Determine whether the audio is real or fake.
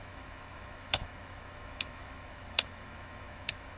fake